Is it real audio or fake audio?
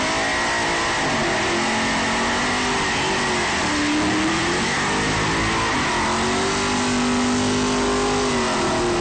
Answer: real